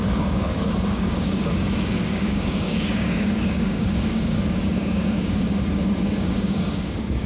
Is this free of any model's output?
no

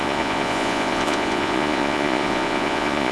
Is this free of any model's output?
no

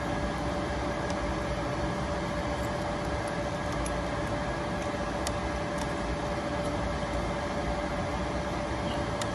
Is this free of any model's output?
yes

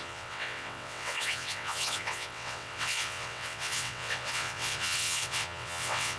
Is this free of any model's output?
no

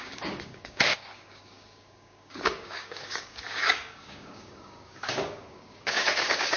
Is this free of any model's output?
no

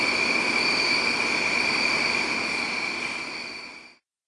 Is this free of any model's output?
yes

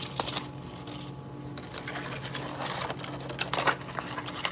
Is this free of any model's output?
yes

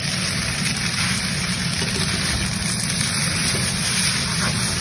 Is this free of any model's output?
no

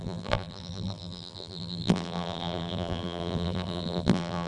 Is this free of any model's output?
no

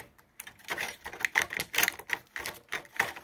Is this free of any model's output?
yes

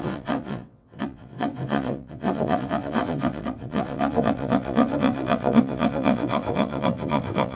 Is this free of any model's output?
no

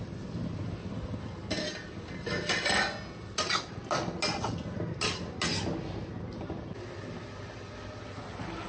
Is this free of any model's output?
yes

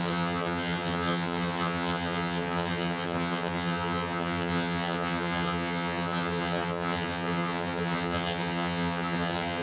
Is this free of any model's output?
no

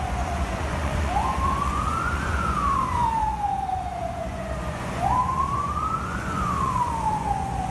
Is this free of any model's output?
no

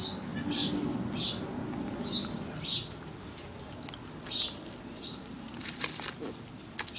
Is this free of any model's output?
yes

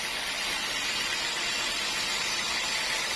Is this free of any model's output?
yes